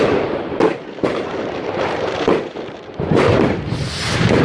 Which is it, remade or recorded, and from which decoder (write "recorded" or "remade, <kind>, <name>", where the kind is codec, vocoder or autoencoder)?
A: remade, vocoder, BigVGAN v2